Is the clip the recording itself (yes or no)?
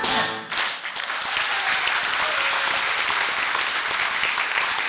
yes